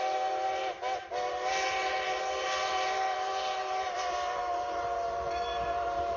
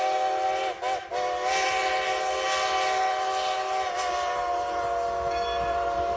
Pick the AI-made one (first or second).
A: first